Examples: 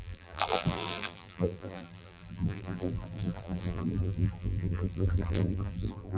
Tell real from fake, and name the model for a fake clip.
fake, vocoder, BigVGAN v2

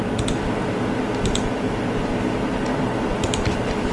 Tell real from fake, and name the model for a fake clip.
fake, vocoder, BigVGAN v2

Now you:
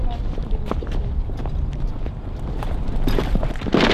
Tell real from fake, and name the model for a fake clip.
real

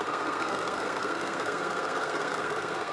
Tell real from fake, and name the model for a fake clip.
fake, codec, SNAC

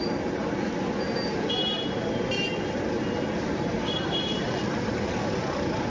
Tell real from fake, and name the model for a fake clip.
real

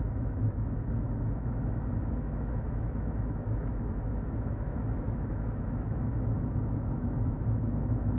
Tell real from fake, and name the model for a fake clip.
fake, autoencoder, DAC-VAE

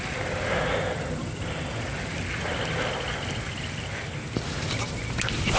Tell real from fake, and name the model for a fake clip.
real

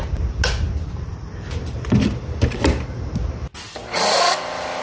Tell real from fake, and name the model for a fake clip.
real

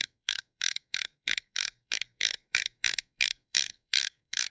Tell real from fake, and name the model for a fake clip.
fake, codec, SNAC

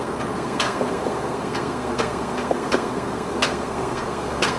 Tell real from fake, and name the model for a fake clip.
fake, codec, SNAC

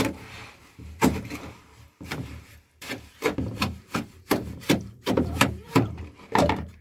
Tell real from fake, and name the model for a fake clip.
fake, vocoder, BigVGAN v2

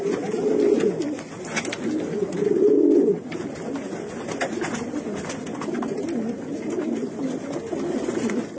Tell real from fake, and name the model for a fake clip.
real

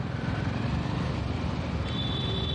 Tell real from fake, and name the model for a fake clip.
real